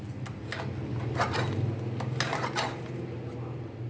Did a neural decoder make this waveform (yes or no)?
no